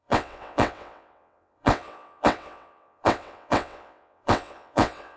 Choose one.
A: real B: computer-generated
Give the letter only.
B